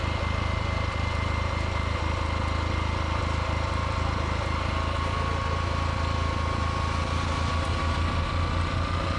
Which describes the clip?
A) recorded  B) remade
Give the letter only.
A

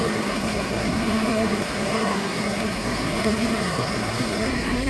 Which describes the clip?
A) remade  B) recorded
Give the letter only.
A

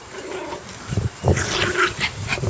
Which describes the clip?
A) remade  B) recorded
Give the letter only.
B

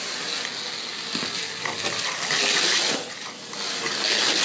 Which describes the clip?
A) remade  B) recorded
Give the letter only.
B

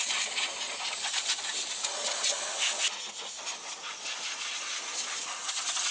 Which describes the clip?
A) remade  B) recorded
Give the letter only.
B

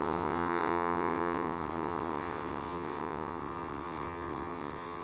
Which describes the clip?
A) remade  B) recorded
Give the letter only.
A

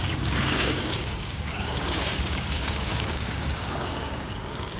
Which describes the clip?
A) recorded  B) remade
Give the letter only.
B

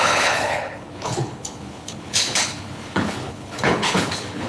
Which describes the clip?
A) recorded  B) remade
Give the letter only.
B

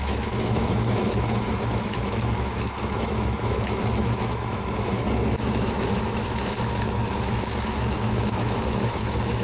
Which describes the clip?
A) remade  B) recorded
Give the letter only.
A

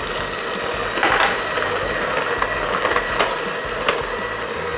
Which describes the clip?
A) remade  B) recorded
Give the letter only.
B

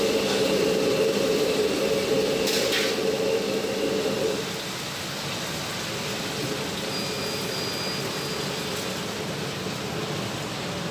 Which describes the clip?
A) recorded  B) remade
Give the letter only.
A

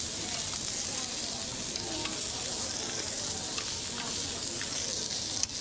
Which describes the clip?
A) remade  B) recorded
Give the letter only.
B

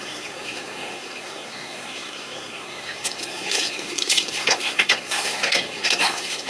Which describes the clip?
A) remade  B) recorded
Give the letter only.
A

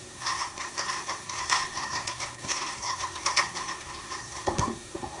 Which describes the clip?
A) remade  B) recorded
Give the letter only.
A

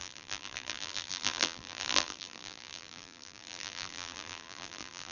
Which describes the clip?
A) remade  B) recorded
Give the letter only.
A